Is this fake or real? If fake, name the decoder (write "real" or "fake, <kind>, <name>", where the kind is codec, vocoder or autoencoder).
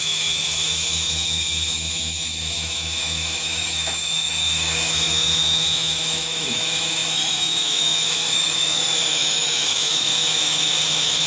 fake, autoencoder, DAC-VAE